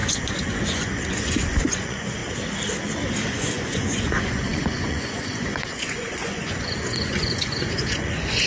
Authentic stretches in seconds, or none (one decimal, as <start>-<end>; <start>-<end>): 2.2-3.3

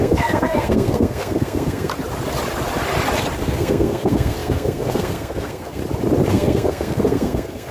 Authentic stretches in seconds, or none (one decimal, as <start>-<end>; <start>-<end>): 1.9-3.4; 5.8-6.3

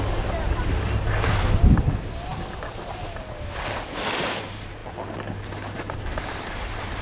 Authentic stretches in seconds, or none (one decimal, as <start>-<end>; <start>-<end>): 0.0-7.0

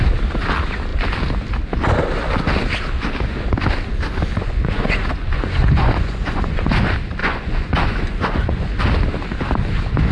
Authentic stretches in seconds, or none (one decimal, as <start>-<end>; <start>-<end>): 0.0-4.4; 6.7-7.2; 8.8-10.1

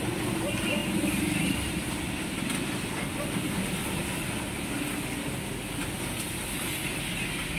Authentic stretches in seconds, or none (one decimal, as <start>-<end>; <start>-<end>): 0.0-7.6

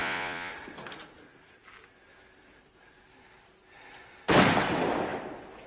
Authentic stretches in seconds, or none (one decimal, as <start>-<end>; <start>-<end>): 0.5-5.7